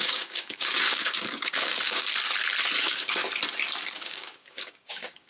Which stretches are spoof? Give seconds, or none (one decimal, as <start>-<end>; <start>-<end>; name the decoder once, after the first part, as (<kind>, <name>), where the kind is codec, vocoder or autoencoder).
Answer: 0.0-2.1 (codec, DAC); 2.8-3.2; 4.0-5.3